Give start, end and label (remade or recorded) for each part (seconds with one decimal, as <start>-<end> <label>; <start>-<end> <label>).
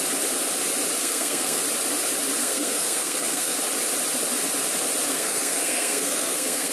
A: 0.0-1.0 recorded; 1.0-1.6 remade; 1.6-2.4 recorded; 2.4-3.6 remade; 3.6-5.1 recorded; 5.1-6.7 remade